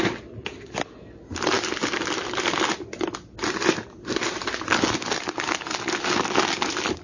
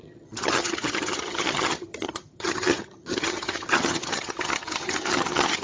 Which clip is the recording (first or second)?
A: first